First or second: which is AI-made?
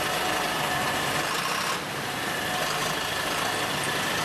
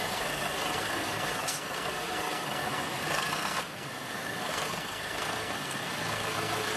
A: second